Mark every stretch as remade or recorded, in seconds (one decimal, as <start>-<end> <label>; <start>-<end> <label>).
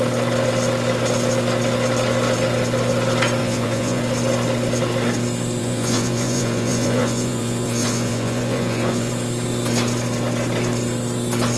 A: 0.0-3.4 recorded; 3.4-4.0 remade; 4.0-5.6 recorded; 5.6-9.1 remade; 9.1-11.6 recorded